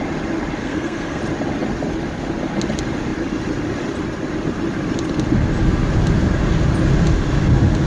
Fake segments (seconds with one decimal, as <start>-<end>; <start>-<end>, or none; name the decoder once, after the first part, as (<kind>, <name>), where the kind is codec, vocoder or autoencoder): 0.6-1.2 (codec, SNAC)